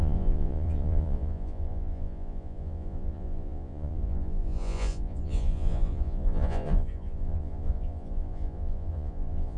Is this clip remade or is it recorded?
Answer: remade